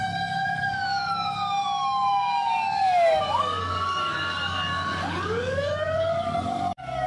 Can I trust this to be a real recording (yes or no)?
no